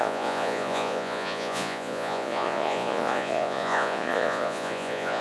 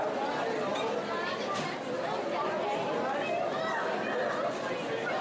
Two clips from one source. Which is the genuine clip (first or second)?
second